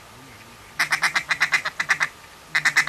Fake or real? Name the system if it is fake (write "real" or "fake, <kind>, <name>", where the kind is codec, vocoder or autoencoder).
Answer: real